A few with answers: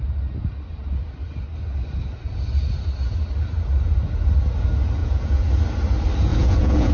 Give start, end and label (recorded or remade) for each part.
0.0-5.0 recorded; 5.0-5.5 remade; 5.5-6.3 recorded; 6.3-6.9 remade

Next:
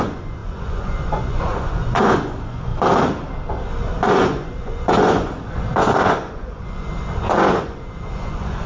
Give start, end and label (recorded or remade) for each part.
0.0-2.7 remade; 2.7-3.5 recorded; 3.5-8.7 remade

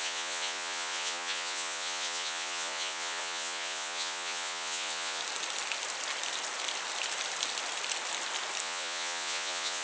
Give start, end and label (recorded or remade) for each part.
0.0-5.2 remade; 5.2-8.6 recorded; 8.6-9.8 remade